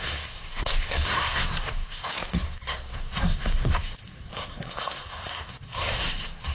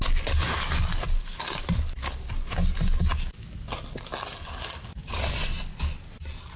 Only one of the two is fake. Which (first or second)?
first